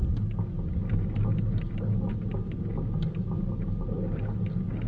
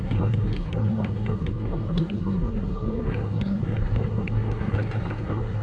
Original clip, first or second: first